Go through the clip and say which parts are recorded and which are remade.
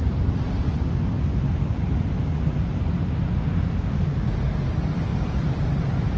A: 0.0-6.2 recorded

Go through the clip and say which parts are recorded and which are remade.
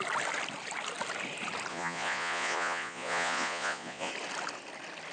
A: 0.0-1.7 recorded; 1.7-4.1 remade; 4.1-5.1 recorded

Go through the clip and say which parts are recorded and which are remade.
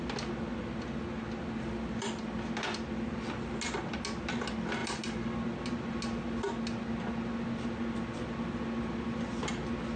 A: 0.0-10.0 recorded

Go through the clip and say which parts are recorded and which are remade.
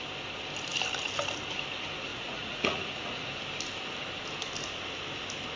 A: 0.0-2.1 recorded; 2.1-3.3 remade; 3.3-5.6 recorded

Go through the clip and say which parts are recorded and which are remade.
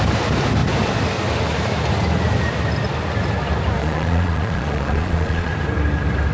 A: 0.0-3.8 recorded; 3.8-5.5 remade; 5.5-6.3 recorded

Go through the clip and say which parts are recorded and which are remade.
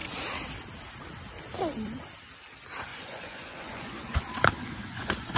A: 0.0-2.9 recorded; 2.9-5.4 remade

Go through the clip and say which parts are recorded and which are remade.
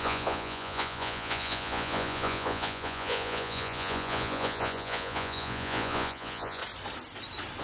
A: 0.0-6.6 remade; 6.6-7.6 recorded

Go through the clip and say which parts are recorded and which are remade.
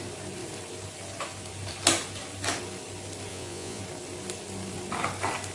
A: 0.0-3.3 recorded; 3.3-3.8 remade; 3.8-5.5 recorded